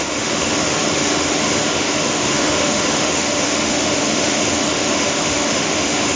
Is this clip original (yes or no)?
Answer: no